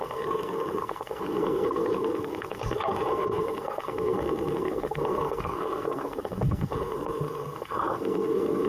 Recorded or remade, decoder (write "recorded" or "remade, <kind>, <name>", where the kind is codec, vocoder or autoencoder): remade, codec, SNAC